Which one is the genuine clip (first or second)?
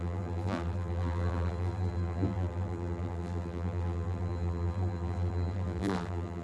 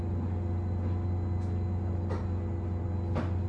second